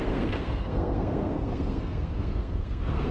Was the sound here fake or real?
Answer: fake